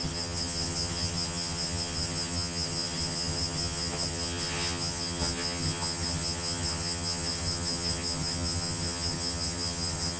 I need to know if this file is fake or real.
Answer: fake